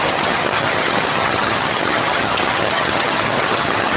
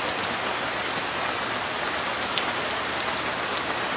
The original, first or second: second